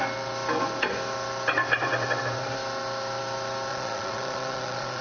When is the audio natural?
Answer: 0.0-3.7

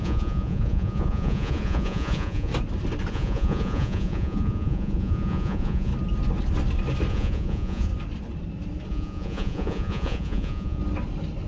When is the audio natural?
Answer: 2.5-3.1; 5.9-7.1; 7.9-8.9; 10.8-11.5